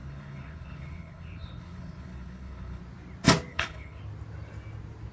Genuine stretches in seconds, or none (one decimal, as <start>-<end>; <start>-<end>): 2.8-3.5; 4.0-5.1